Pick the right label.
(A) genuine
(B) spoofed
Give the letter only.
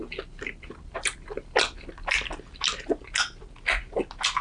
A